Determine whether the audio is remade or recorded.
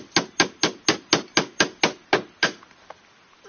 recorded